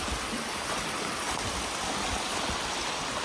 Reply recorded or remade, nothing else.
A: recorded